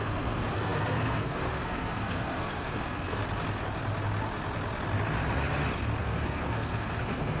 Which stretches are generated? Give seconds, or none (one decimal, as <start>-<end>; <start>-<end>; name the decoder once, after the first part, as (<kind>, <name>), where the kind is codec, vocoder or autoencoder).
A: 0.0-3.2 (codec, SNAC); 6.0-7.4